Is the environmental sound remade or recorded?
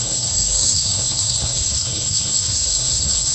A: remade